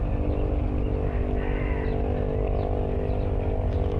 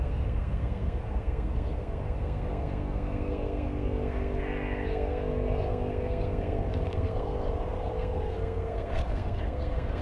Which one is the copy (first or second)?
second